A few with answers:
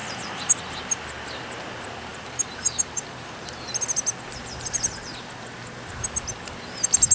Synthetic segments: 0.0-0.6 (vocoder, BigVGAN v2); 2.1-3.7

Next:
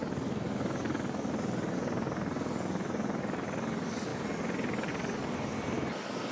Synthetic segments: none

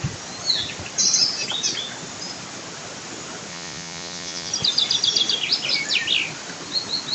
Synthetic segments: 3.5-4.5 (vocoder, Vocos)

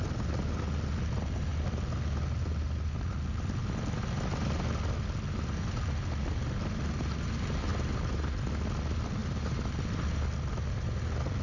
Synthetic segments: none

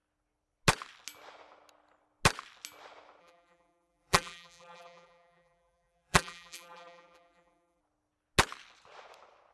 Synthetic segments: 3.2-7.8 (vocoder, BigVGAN v2)